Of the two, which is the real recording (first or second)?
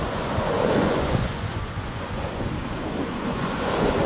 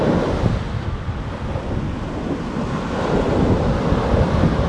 second